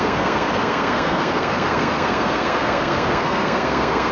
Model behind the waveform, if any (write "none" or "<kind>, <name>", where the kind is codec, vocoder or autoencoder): codec, SNAC